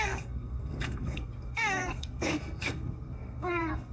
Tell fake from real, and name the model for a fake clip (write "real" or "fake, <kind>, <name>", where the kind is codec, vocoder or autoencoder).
fake, codec, SNAC